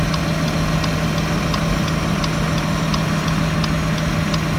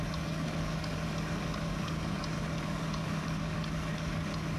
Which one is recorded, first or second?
first